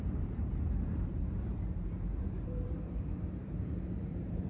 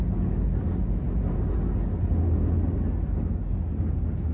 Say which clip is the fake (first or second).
first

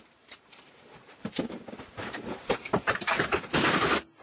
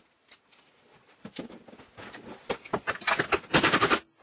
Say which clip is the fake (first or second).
first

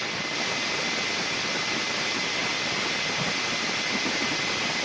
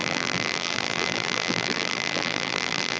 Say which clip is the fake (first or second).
second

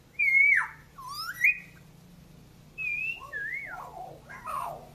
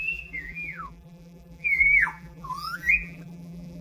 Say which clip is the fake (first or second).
second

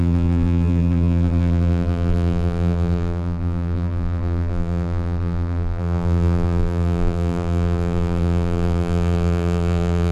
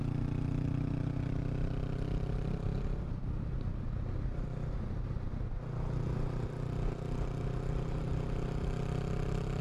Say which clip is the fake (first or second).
first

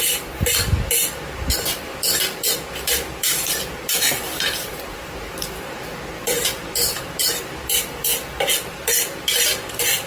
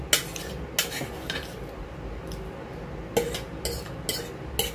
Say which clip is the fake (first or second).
first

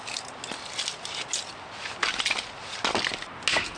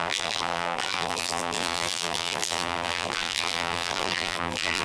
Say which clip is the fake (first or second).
second